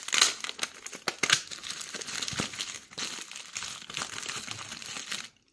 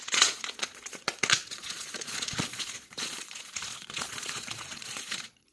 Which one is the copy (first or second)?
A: second